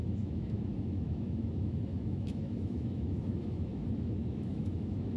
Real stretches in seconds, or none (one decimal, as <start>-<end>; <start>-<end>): none